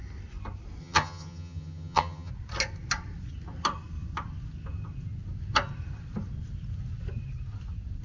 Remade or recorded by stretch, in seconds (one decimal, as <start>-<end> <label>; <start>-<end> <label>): 0.0-0.8 recorded; 0.8-2.3 remade; 2.3-8.0 recorded